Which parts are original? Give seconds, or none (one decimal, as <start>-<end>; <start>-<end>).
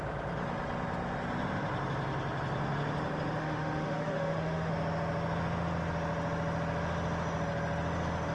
0.0-3.4; 4.7-8.3